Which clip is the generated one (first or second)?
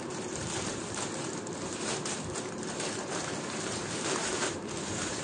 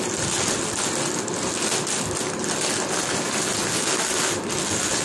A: first